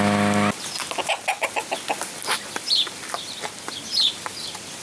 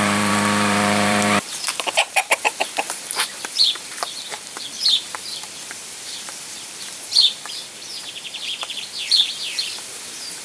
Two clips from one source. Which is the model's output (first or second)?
second